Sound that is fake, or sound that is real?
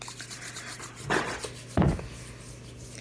real